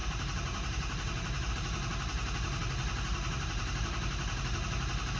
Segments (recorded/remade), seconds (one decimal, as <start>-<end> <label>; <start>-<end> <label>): 0.0-1.5 remade; 1.5-3.1 recorded; 3.1-4.4 remade; 4.4-5.2 recorded